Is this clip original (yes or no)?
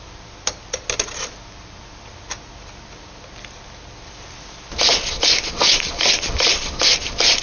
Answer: yes